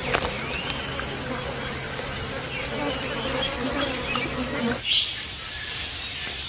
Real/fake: real